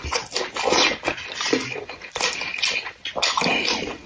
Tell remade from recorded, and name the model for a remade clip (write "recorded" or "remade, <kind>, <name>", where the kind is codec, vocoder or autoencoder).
recorded